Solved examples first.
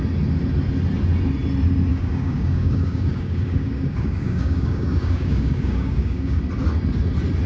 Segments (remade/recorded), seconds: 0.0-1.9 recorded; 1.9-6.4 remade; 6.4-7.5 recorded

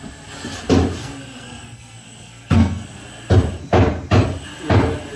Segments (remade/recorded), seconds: 0.0-1.0 recorded; 1.0-3.0 remade; 3.0-5.2 recorded

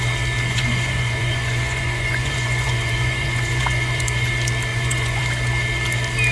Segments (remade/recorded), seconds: 0.0-0.5 recorded; 0.5-4.3 remade; 4.3-4.7 recorded; 4.7-5.2 remade; 5.2-6.3 recorded

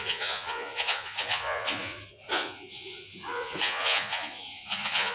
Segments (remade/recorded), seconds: 0.0-5.1 remade